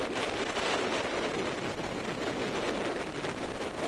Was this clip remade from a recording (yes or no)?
no